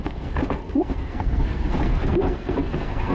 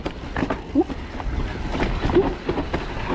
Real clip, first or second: second